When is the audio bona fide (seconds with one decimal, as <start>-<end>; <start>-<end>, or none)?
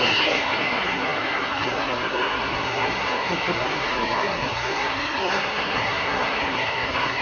none